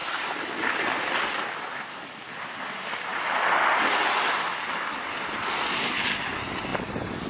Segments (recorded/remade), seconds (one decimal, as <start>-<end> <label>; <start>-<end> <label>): 0.0-7.3 recorded